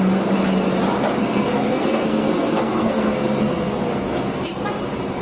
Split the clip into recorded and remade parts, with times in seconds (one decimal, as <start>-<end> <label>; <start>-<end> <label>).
0.0-1.2 recorded; 1.2-4.3 remade; 4.3-5.2 recorded